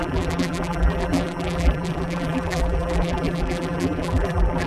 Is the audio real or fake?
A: fake